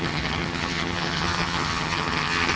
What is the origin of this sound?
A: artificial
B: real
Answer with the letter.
A